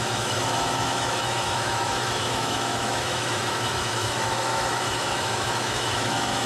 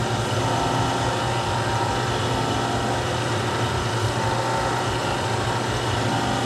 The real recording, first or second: second